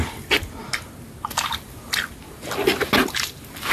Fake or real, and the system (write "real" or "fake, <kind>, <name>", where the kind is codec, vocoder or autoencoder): real